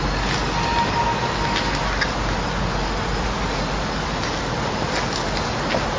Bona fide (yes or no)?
yes